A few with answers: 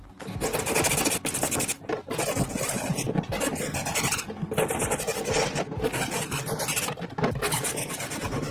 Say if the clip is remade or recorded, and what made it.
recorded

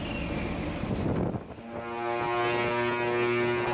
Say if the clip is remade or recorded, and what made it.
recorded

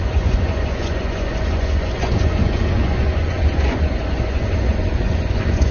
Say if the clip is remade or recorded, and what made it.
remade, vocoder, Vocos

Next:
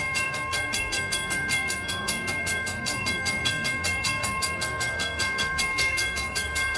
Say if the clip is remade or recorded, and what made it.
remade, codec, SNAC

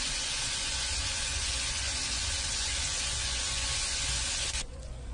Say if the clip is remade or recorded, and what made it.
remade, vocoder, Vocos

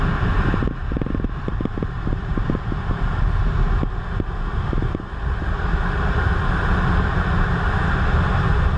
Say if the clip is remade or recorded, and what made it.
recorded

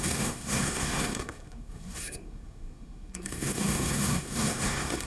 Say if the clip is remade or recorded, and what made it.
remade, codec, SNAC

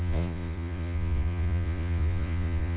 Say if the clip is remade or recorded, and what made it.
remade, vocoder, Vocos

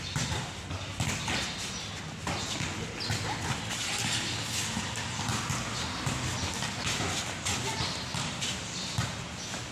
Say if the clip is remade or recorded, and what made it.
recorded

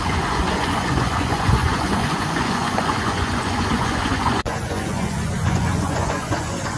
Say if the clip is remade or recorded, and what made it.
remade, vocoder, Vocos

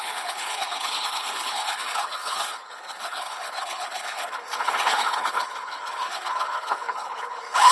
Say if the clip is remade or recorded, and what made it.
remade, codec, HILCodec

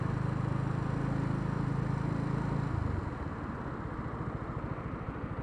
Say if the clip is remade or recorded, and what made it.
recorded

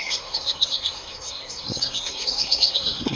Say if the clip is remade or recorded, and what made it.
remade, codec, SNAC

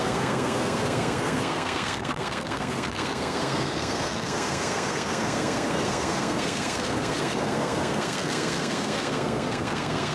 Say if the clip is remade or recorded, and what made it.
remade, codec, SNAC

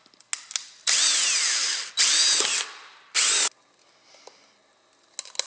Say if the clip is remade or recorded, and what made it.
recorded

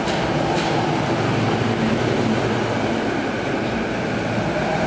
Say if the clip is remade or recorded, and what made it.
recorded